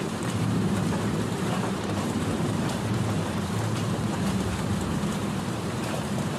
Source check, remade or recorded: remade